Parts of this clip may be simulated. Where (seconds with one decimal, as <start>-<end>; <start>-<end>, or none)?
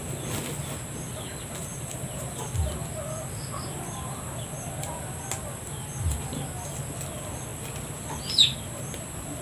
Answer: none